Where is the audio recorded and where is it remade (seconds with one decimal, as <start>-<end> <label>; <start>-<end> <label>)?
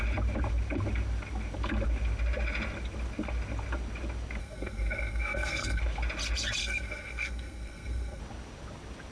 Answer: 0.0-4.4 recorded; 4.4-5.8 remade; 5.8-6.6 recorded; 6.6-8.2 remade; 8.2-9.1 recorded